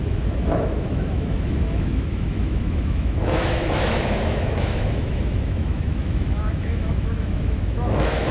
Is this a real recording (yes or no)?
no